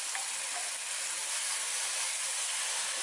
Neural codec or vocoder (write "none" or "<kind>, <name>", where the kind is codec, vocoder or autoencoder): none